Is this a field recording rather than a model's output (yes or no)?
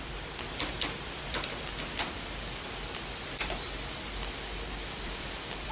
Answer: no